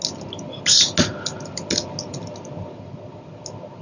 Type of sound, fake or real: real